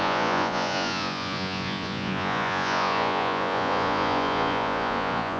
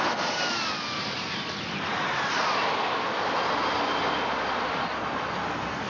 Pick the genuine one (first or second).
second